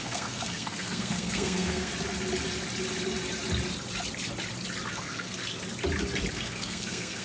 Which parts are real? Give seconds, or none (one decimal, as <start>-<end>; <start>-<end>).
1.9-4.9; 5.4-6.3